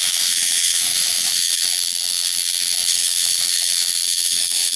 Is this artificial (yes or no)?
yes